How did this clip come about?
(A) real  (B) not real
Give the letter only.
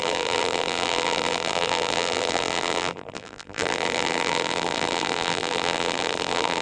B